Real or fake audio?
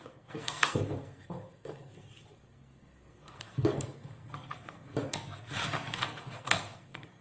fake